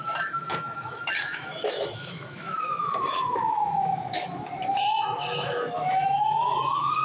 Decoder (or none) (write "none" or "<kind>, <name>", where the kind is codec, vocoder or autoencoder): autoencoder, DAC-VAE